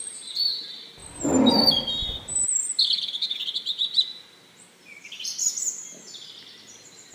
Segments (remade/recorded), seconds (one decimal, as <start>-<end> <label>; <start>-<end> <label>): 0.0-7.1 recorded